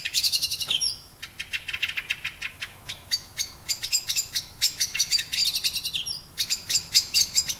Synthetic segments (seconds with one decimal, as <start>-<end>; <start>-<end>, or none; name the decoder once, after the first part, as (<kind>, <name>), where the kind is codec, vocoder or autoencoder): 0.0-1.1 (autoencoder, DAC-VAE); 2.5-5.4; 6.3-7.6